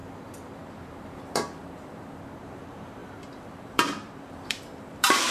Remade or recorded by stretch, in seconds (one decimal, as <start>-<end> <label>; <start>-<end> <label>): 0.0-0.7 recorded; 0.7-1.6 remade; 1.6-2.4 recorded; 2.4-5.3 remade